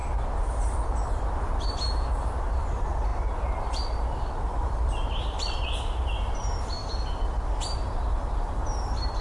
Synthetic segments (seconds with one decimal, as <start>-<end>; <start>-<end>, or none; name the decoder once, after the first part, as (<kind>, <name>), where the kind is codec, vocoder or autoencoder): 1.3-6.8 (vocoder, BigVGAN v2); 8.0-9.2